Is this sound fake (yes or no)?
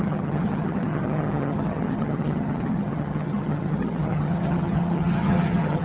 yes